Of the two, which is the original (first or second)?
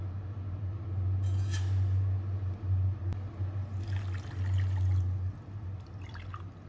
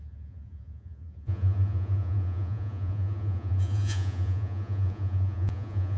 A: first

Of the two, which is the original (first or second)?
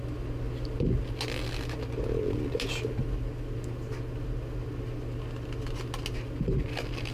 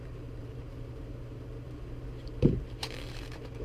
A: first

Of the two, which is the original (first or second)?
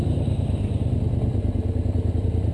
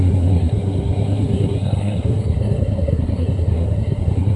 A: first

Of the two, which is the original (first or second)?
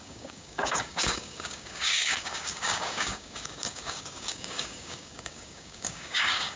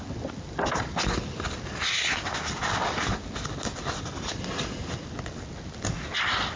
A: second